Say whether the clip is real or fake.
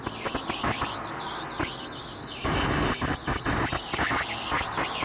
real